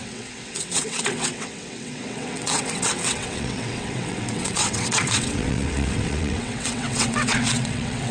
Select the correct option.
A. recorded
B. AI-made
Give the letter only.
B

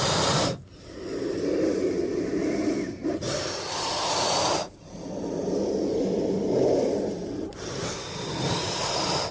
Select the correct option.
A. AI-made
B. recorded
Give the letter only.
A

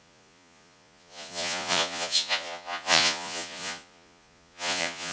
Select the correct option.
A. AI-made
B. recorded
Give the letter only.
A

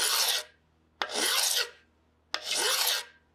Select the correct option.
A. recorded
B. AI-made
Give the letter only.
A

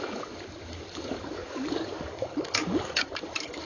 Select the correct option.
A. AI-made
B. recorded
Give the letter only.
A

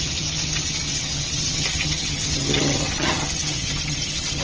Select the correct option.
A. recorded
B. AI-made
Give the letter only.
B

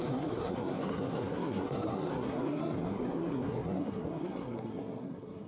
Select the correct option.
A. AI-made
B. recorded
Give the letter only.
A